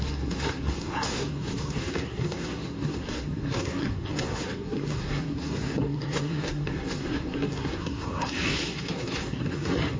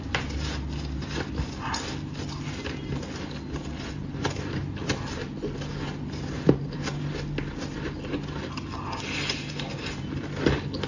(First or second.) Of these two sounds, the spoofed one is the first